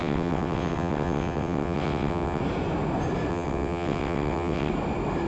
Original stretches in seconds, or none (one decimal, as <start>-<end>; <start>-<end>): 2.4-3.3; 4.7-5.3